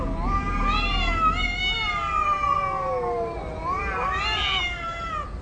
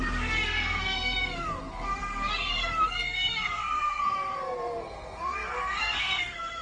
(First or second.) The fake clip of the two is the second